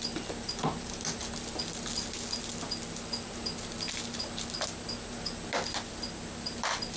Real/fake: fake